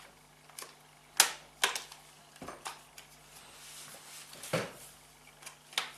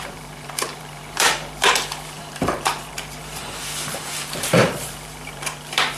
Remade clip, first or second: second